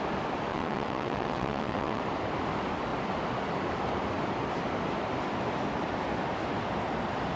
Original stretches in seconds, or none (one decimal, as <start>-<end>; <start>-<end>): 0.0-0.5; 2.0-7.4